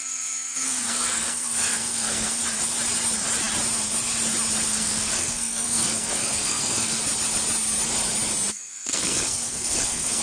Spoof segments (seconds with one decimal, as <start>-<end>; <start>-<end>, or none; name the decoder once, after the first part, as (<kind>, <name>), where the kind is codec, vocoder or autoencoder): 0.0-2.4 (codec, SNAC); 4.7-7.0; 8.5-10.2